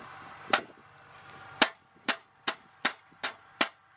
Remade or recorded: recorded